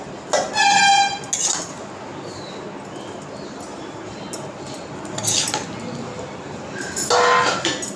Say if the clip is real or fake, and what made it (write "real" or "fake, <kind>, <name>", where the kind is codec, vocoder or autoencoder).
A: real